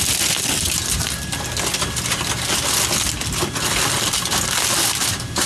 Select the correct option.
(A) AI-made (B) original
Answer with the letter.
B